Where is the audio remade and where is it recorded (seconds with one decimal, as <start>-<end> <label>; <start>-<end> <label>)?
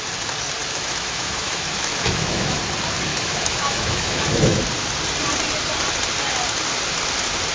0.0-0.6 recorded; 0.6-2.6 remade; 2.6-3.1 recorded; 3.1-4.6 remade; 4.6-7.5 recorded